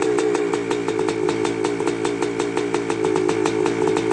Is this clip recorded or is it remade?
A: recorded